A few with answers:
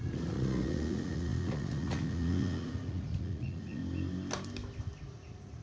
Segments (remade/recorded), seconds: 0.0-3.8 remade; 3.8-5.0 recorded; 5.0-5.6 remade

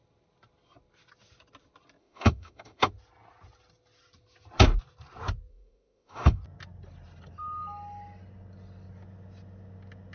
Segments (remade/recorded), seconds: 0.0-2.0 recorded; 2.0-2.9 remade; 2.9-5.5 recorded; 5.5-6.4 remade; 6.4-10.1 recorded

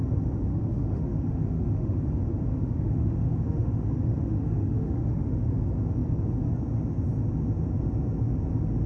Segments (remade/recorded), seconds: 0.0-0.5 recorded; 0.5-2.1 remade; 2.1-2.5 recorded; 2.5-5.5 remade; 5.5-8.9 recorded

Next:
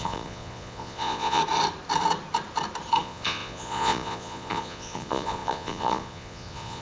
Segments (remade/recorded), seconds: 0.0-1.4 remade; 1.4-3.0 recorded; 3.0-6.8 remade